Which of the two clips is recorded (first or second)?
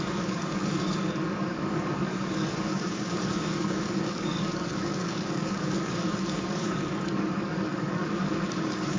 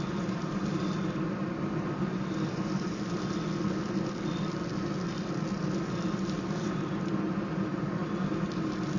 second